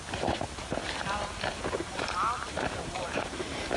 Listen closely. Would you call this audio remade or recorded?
remade